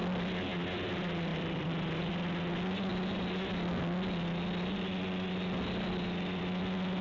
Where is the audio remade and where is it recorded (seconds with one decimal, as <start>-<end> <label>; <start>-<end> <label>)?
0.0-1.3 recorded; 1.3-2.0 remade; 2.0-7.0 recorded